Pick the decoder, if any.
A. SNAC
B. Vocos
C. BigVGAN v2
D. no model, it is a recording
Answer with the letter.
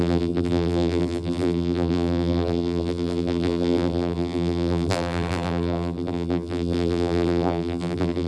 C